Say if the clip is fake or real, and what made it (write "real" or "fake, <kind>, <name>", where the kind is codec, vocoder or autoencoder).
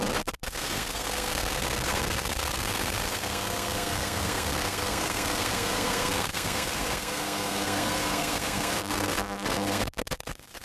fake, codec, SNAC